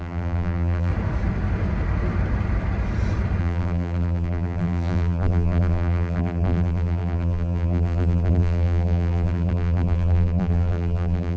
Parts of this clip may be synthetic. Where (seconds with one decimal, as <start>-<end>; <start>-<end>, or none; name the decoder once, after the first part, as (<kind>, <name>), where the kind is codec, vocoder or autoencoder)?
0.0-0.9 (vocoder, BigVGAN v2); 3.4-11.4